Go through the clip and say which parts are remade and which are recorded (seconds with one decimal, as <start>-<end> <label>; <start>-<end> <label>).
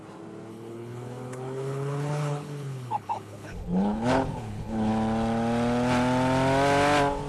0.0-0.5 recorded; 0.5-4.9 remade; 4.9-7.3 recorded